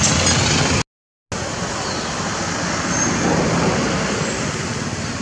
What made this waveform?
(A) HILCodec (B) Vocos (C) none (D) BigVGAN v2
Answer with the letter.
C